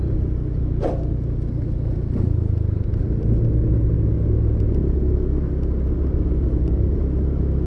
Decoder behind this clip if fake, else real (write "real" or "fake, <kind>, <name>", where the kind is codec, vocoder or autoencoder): real